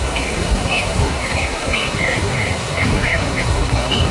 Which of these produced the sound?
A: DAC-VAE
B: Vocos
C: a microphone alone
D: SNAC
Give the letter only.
D